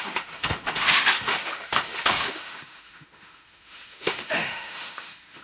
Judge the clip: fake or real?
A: fake